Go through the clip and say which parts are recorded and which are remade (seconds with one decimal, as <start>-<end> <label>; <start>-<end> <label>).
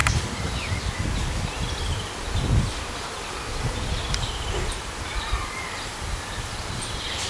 0.0-7.3 recorded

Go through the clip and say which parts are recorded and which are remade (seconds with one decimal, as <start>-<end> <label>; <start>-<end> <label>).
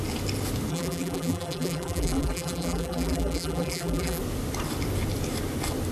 0.0-0.7 recorded; 0.7-4.2 remade; 4.2-5.9 recorded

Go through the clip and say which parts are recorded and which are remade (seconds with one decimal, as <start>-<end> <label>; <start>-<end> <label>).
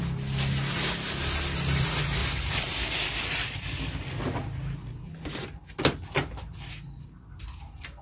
0.0-2.2 recorded; 2.2-4.1 remade; 4.1-8.0 recorded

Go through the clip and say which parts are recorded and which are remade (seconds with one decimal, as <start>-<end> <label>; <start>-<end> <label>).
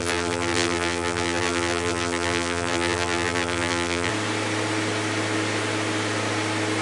0.0-4.1 remade; 4.1-6.8 recorded